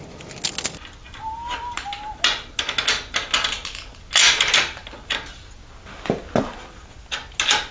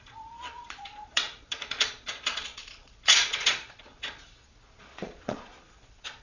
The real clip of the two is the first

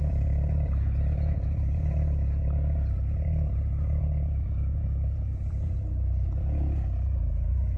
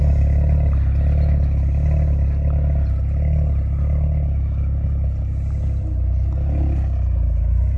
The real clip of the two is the second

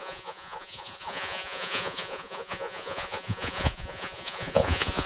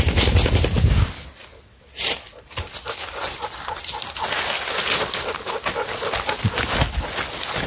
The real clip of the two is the second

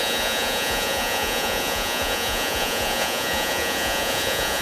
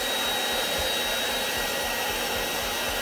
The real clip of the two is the second